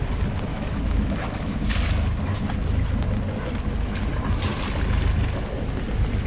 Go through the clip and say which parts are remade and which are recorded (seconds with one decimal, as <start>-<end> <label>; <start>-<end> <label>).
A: 0.0-0.5 recorded; 0.5-1.7 remade; 1.7-6.3 recorded